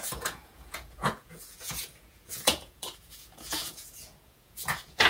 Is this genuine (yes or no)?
no